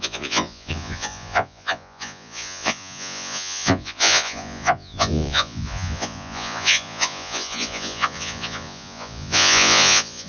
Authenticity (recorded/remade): remade